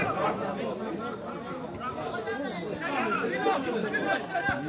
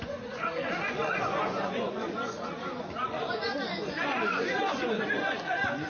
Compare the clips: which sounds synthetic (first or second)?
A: second